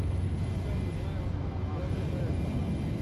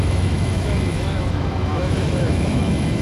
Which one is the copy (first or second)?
second